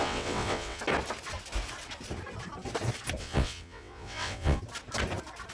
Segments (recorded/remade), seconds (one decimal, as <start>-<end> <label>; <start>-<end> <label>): 0.0-0.8 remade; 0.8-3.2 recorded; 3.2-4.6 remade; 4.6-5.5 recorded